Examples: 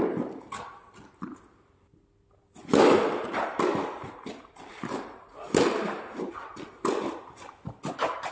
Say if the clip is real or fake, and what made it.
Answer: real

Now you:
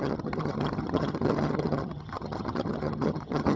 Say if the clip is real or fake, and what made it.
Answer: fake, vocoder, HiFi-GAN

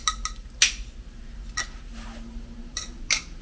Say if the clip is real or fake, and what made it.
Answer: real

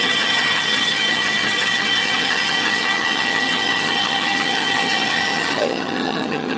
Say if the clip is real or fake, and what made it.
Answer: fake, vocoder, HiFi-GAN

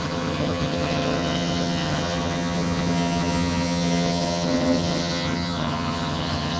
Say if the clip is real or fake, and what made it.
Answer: fake, vocoder, HiFi-GAN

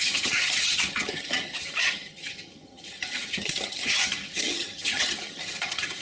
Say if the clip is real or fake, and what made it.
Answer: fake, vocoder, HiFi-GAN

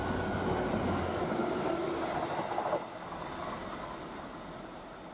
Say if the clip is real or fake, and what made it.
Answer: real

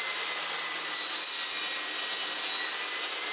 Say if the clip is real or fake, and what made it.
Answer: real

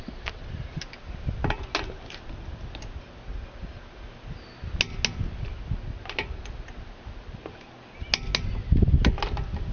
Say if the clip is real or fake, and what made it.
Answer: real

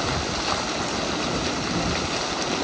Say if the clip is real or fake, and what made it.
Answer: real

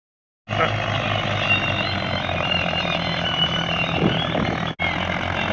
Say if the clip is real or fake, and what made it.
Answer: real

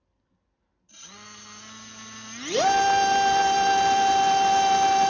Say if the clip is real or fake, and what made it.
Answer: real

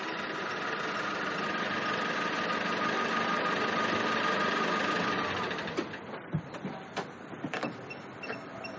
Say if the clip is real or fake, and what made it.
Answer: real